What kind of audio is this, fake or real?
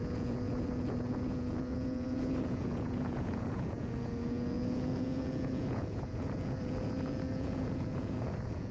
fake